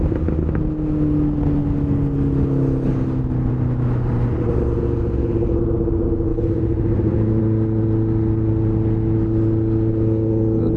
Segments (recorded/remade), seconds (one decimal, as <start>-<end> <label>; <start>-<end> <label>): 0.0-6.3 recorded; 6.3-7.4 remade; 7.4-10.8 recorded